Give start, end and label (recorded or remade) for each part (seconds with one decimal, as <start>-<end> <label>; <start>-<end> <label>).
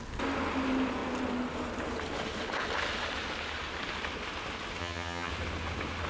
0.0-4.8 recorded; 4.8-5.3 remade; 5.3-6.1 recorded